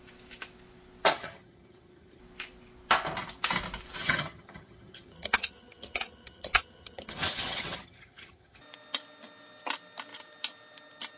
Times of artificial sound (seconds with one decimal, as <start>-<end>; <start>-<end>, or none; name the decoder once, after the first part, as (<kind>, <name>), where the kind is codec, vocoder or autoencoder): 1.1-2.2 (vocoder, HiFi-GAN); 4.0-8.6

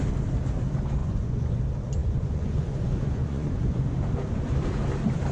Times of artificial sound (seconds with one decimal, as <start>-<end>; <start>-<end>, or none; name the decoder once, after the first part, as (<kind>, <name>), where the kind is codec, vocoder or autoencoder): 1.0-1.6 (vocoder, Vocos); 2.0-3.8

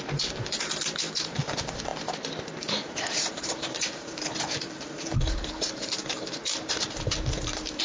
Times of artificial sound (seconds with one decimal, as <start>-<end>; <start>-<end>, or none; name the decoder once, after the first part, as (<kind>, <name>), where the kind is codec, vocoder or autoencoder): 0.0-1.9 (vocoder, BigVGAN v2); 3.1-7.8

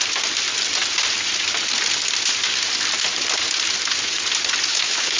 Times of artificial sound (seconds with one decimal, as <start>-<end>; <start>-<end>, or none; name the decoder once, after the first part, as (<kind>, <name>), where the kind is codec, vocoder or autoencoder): 4.7-5.2 (autoencoder, DAC-VAE)

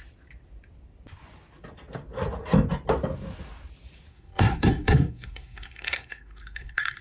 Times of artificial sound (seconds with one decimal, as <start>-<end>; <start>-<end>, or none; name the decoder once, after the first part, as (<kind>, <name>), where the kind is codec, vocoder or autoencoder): 4.1-7.0 (codec, SNAC)

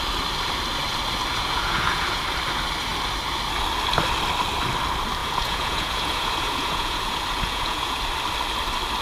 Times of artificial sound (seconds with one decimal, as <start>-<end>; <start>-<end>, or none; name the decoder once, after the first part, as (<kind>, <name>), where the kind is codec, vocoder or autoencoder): 1.3-2.2 (vocoder, Vocos); 5.2-8.0

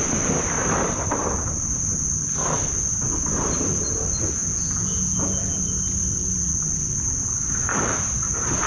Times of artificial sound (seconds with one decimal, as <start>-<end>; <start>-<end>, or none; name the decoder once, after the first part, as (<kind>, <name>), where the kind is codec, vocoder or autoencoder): 4.4-5.6 (vocoder, Vocos)